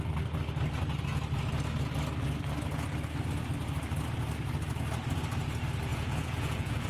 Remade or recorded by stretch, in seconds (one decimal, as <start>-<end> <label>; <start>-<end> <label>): 0.0-5.9 recorded; 5.9-6.9 remade